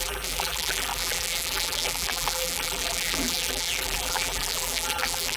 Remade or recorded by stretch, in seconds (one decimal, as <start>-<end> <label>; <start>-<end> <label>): 0.0-5.4 remade